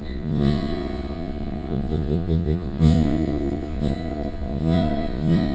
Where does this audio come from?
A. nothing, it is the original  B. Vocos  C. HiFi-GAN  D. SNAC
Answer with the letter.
B